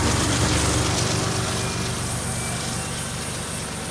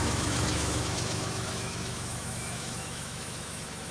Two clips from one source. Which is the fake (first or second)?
second